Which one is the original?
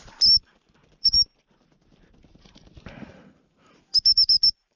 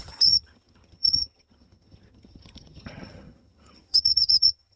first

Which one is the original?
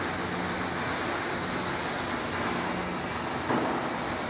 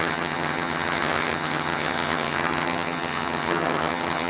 first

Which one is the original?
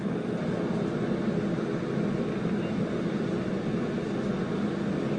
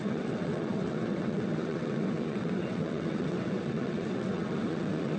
first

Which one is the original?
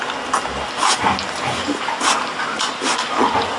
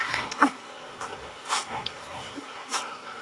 first